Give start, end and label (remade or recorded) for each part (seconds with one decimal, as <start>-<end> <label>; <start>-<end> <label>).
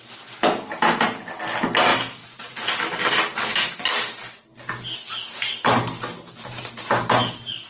0.0-7.7 recorded